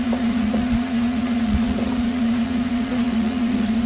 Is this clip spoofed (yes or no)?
yes